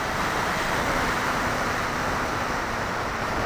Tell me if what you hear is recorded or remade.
remade